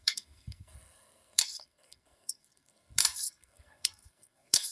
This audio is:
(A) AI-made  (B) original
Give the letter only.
A